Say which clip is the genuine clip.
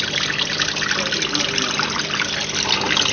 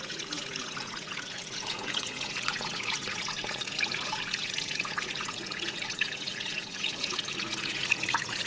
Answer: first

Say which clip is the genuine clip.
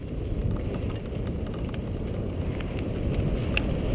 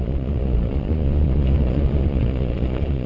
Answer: first